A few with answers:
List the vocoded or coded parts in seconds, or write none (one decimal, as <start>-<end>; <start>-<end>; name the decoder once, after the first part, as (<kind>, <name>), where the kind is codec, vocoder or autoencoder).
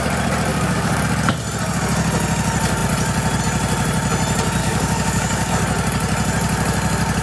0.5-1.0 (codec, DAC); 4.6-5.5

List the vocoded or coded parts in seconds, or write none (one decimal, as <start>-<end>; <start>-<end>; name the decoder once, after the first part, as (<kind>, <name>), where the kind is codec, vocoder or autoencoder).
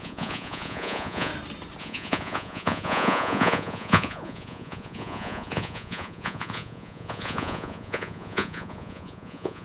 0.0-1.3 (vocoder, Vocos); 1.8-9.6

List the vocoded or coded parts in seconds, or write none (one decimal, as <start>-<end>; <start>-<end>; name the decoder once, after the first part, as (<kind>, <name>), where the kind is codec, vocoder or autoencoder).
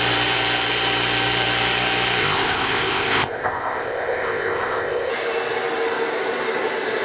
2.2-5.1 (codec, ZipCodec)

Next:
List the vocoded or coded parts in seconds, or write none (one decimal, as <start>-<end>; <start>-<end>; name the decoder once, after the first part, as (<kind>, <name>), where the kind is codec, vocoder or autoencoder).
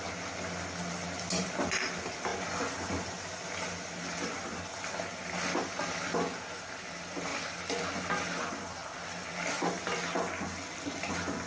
none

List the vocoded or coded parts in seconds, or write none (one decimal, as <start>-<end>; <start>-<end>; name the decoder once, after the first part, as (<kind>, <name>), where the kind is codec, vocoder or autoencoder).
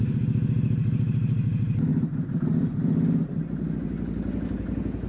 1.9-3.7 (vocoder, BigVGAN v2)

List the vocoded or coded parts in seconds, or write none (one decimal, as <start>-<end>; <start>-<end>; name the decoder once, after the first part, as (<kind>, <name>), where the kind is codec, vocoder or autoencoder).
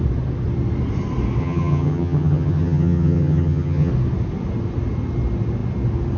1.4-3.9 (vocoder, HiFi-GAN)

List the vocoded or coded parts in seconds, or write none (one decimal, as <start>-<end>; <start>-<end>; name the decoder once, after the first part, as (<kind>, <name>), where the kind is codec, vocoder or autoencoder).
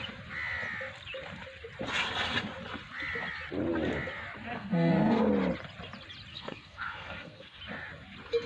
4.5-5.3 (codec, SNAC); 6.3-7.6